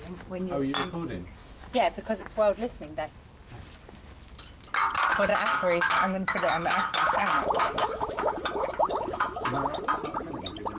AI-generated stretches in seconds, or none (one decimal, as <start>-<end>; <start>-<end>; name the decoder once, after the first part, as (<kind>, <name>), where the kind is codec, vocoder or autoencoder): 1.4-2.1 (autoencoder, DAC-VAE); 5.3-9.8

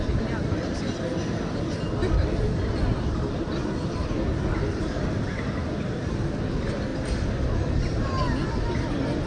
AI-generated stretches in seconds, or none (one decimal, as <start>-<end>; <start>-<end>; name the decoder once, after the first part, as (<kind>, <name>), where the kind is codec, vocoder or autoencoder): none

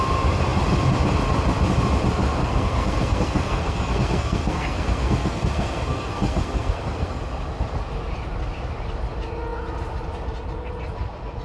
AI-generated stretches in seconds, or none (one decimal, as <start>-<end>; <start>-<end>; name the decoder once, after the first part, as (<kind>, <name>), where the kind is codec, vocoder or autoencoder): 2.4-7.2 (codec, SNAC)

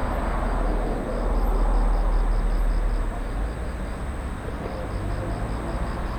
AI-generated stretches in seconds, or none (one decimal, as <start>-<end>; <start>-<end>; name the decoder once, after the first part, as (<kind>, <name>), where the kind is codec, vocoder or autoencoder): none

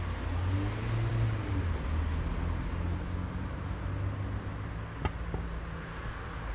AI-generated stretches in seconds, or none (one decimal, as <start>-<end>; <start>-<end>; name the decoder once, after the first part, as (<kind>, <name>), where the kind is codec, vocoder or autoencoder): none

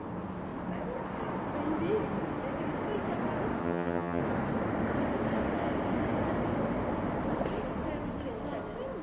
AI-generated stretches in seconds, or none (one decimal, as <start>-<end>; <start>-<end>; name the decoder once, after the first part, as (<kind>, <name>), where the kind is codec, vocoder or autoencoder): 3.6-4.2 (vocoder, HiFi-GAN)